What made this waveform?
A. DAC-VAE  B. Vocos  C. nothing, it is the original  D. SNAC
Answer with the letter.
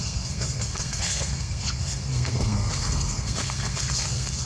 D